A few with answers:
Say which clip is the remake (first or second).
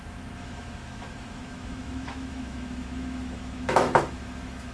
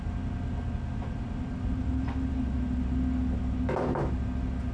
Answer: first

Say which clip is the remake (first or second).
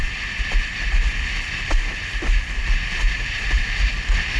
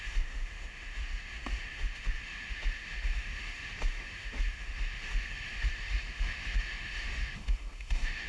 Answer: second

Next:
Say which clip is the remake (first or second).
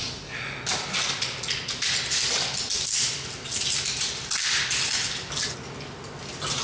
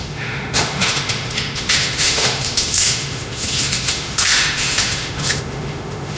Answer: second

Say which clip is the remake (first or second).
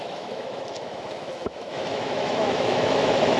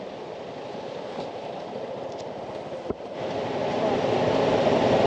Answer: first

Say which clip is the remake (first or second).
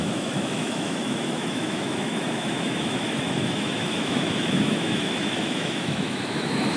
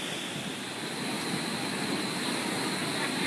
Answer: first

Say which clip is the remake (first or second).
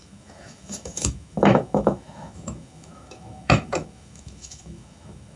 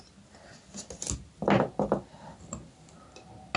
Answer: first